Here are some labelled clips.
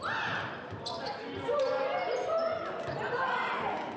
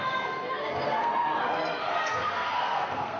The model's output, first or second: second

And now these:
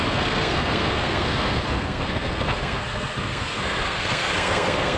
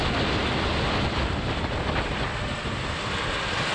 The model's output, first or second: first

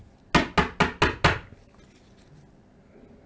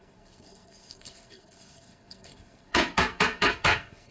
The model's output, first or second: second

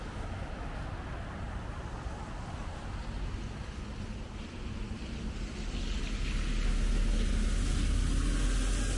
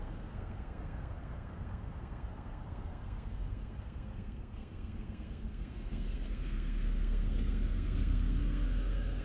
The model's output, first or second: second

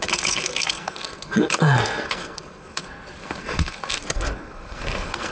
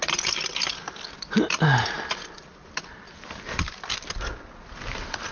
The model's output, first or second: first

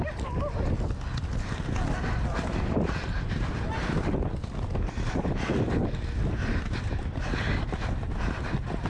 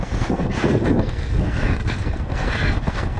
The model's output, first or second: second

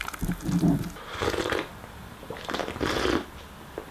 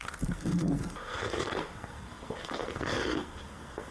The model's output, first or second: second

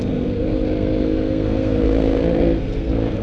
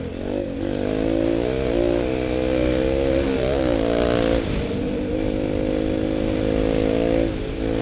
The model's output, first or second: first